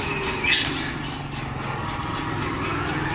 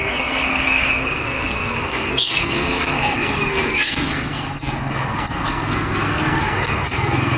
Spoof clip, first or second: second